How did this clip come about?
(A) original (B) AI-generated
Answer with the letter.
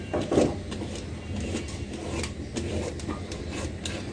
A